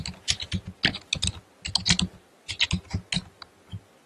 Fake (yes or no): no